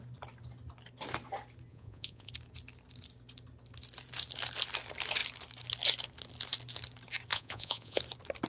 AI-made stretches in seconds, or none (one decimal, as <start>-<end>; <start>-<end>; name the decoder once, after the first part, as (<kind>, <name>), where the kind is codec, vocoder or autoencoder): 1.7-2.3 (vocoder, Vocos); 7.3-8.0

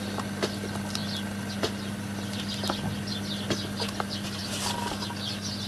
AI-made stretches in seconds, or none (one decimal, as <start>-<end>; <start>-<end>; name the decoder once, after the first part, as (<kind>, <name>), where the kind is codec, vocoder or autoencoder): none

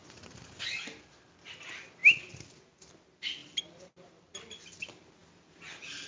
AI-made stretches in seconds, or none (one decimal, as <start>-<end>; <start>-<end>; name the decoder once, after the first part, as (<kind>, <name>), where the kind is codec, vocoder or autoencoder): none